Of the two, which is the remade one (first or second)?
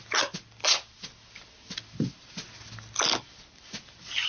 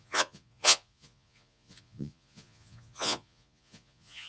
second